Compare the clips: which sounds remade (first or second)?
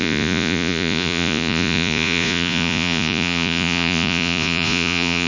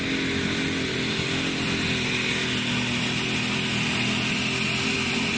first